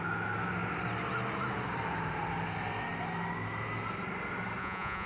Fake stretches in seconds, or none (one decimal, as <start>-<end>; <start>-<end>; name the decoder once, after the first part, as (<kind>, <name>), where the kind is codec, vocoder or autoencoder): 4.6-5.1 (vocoder, Vocos)